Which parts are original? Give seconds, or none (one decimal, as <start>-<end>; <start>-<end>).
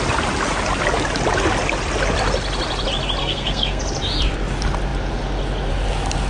0.0-3.2; 3.8-6.3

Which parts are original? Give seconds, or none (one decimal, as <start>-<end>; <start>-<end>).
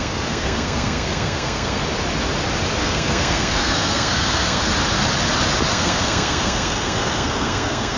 1.8-2.8; 4.6-5.7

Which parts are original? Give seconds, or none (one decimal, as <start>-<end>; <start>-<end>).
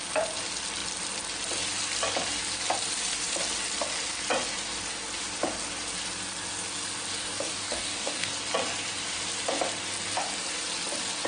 0.0-7.2; 8.3-11.3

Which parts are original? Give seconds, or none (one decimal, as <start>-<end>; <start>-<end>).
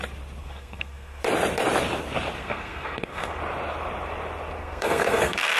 0.0-0.4; 1.2-2.4; 3.4-4.6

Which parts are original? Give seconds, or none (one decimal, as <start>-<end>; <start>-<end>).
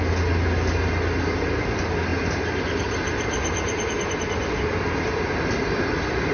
0.0-6.3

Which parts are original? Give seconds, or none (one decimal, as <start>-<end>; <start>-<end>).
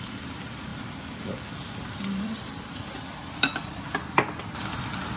0.0-0.7; 3.8-5.2